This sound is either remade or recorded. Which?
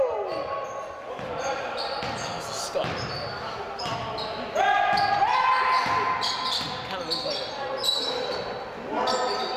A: recorded